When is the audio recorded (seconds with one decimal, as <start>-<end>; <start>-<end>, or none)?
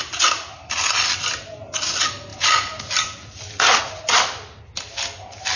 0.0-2.3; 3.8-5.6